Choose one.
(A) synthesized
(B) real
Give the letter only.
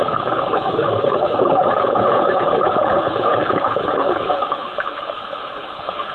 A